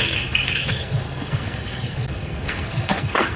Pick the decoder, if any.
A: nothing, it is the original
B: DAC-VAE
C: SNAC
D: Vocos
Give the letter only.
C